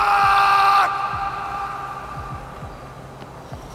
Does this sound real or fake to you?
real